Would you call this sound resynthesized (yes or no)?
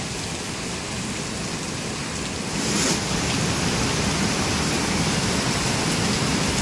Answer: no